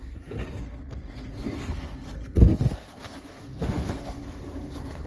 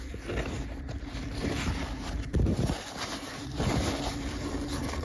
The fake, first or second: first